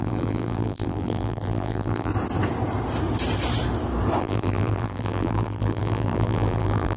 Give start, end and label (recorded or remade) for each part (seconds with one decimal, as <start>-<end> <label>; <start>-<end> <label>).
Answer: 0.0-2.1 remade; 2.1-4.2 recorded; 4.2-7.0 remade